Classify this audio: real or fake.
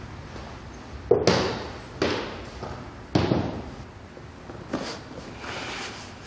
real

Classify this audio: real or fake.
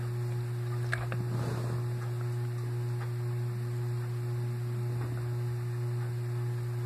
real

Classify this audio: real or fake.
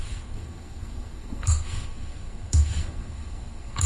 fake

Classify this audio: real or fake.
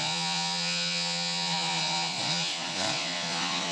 fake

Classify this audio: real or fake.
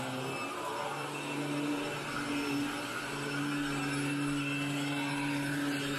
real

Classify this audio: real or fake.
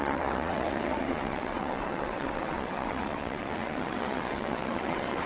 fake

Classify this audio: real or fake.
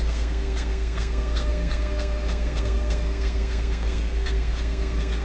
fake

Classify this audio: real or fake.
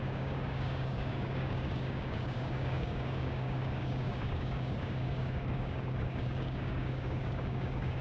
fake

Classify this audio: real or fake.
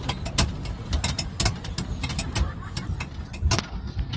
real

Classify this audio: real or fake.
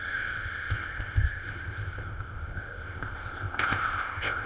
fake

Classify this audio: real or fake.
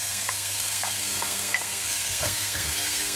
fake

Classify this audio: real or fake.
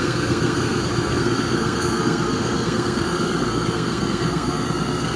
fake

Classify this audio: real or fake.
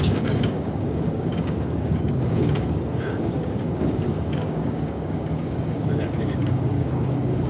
fake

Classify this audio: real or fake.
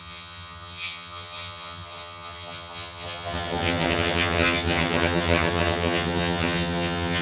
fake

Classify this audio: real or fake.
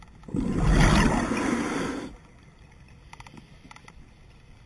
real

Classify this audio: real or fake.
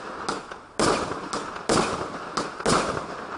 real